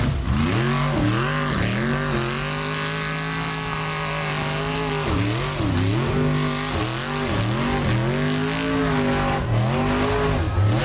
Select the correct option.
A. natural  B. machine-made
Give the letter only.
A